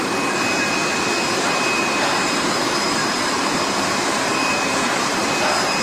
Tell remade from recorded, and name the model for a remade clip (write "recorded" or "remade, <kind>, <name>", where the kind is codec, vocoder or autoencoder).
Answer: remade, vocoder, BigVGAN v2